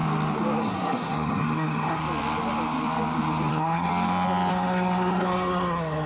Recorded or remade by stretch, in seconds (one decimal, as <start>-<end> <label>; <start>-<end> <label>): 0.0-0.6 recorded; 0.6-2.0 remade; 2.0-3.5 recorded; 3.5-3.9 remade; 3.9-4.5 recorded; 4.5-6.1 remade